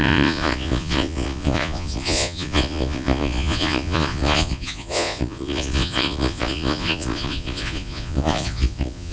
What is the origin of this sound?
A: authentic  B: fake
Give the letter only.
B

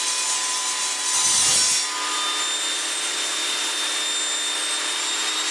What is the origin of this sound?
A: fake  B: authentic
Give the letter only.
B